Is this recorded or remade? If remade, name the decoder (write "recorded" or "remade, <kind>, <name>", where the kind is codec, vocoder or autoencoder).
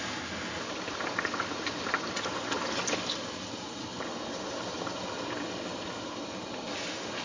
recorded